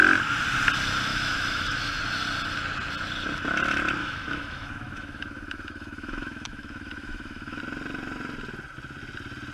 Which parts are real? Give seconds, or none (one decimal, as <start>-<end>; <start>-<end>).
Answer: 0.0-1.1; 2.0-4.0; 7.6-9.5